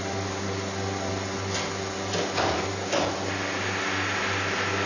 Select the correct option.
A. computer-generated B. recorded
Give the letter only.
B